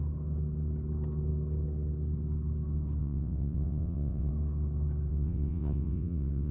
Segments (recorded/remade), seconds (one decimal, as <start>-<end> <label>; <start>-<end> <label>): 0.0-3.0 recorded; 3.0-4.3 remade; 4.3-5.1 recorded; 5.1-6.5 remade